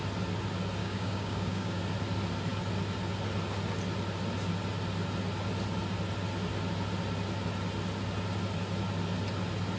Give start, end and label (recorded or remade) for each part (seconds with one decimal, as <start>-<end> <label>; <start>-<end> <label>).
0.0-0.8 recorded; 0.8-1.8 remade; 1.8-9.8 recorded